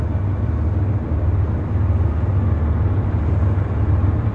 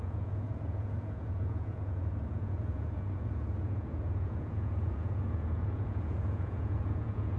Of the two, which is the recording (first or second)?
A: first